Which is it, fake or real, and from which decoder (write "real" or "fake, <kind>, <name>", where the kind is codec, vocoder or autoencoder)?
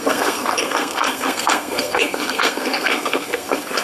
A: fake, codec, SNAC